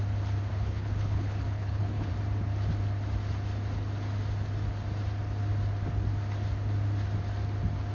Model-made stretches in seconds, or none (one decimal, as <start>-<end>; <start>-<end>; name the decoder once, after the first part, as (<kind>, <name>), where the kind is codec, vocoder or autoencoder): 0.5-2.1 (codec, HILCodec)